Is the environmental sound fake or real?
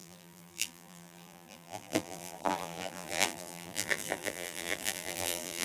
fake